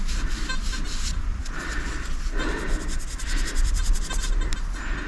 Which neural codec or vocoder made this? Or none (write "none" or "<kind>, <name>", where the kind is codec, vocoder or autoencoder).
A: none